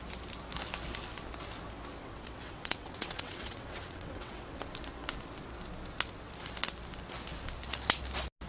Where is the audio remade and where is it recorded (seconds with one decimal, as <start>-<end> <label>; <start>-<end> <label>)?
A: 0.0-2.0 recorded; 2.0-4.6 remade; 4.6-8.5 recorded